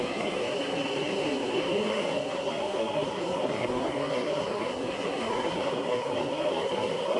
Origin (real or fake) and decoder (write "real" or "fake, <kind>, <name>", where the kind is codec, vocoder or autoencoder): fake, codec, SNAC